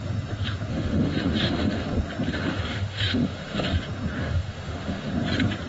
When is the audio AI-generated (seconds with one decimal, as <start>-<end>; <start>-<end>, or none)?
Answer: 0.7-1.9; 2.3-3.7; 4.2-5.1